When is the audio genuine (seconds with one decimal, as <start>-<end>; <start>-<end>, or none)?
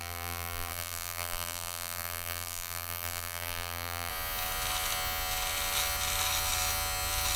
4.1-7.4